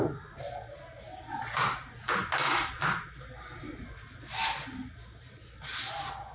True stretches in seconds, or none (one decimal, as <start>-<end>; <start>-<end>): 0.0-6.3